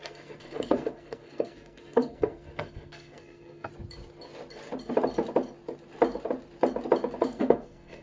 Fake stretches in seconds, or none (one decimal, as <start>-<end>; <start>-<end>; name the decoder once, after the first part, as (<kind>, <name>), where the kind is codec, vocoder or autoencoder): 0.0-3.7 (codec, SNAC); 7.2-8.0